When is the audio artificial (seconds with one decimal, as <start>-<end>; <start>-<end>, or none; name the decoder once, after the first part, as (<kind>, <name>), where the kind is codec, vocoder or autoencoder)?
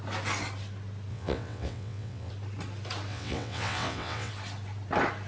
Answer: 1.1-2.3 (vocoder, WaveNeXt); 3.1-4.3